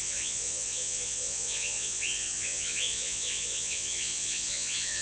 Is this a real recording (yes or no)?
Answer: no